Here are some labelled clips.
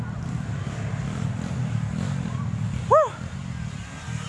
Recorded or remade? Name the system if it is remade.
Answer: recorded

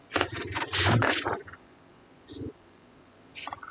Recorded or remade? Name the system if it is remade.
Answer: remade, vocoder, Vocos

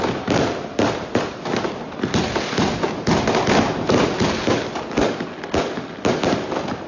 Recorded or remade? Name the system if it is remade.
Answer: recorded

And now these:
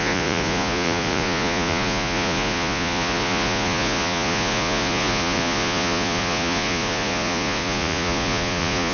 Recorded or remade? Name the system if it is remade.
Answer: remade, vocoder, Vocos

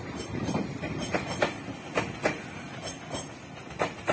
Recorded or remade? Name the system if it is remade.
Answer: recorded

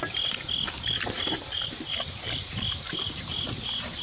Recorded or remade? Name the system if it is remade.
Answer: recorded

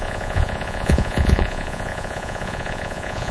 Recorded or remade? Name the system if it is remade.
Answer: remade, vocoder, Vocos